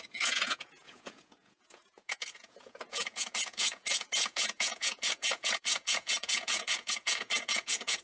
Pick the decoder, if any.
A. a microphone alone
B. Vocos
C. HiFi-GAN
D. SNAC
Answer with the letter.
B